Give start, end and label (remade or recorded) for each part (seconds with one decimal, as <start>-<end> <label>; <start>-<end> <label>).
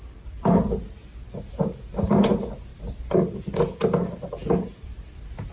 0.0-1.1 recorded; 1.1-1.7 remade; 1.7-2.7 recorded; 2.7-3.5 remade; 3.5-5.5 recorded